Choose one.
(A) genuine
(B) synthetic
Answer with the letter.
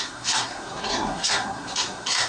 B